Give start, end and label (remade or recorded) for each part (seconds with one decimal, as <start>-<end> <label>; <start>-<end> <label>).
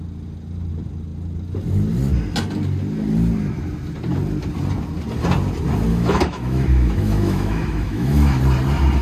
0.0-5.9 recorded; 5.9-8.4 remade; 8.4-9.0 recorded